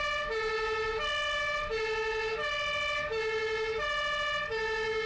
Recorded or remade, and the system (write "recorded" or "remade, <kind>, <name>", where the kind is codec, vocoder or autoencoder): recorded